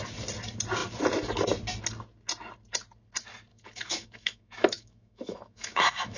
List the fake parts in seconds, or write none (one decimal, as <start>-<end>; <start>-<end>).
3.5-6.2